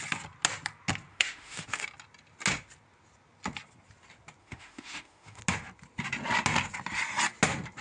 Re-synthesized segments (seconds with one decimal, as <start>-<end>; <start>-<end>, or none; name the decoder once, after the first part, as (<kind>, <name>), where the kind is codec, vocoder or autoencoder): 1.1-1.8 (autoencoder, DAC-VAE); 4.4-5.4